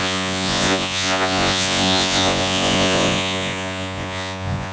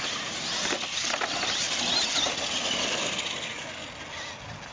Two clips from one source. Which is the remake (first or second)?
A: first